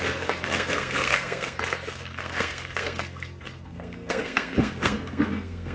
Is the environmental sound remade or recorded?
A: remade